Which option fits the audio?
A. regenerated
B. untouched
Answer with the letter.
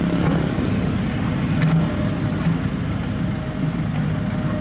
B